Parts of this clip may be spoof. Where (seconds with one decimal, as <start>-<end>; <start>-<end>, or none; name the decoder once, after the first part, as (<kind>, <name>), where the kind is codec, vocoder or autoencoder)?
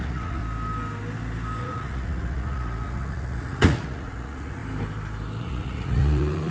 0.0-0.4 (vocoder, Vocos); 1.6-4.6; 5.4-6.5